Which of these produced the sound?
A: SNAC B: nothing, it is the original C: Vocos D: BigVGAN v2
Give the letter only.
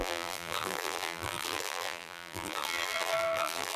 D